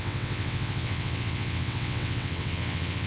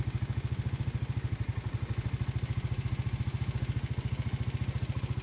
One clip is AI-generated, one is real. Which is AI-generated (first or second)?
first